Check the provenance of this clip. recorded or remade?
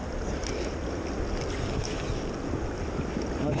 recorded